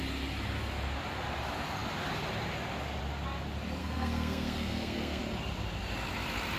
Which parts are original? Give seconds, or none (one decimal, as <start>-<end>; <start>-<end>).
0.0-3.8; 5.2-6.6